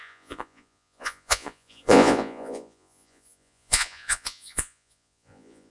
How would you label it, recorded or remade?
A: remade